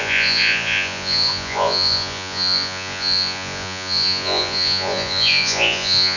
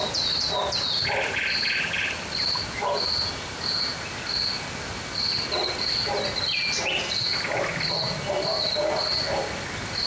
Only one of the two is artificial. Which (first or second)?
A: first